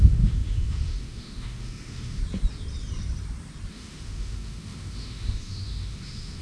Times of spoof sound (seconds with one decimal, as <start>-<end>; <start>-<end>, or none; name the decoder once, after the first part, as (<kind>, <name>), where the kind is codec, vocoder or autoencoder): 0.0-2.2 (autoencoder, DAC-VAE); 3.7-6.4